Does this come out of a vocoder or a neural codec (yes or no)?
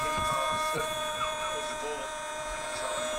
yes